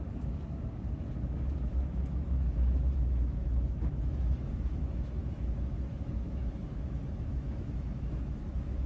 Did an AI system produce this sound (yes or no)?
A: yes